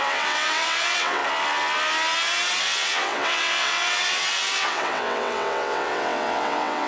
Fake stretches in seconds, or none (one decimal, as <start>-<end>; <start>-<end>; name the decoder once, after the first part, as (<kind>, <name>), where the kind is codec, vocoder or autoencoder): 0.0-1.2 (vocoder, WaveNeXt); 2.6-6.9